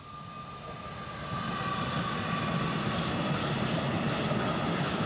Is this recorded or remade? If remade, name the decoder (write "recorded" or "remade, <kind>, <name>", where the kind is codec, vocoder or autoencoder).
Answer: recorded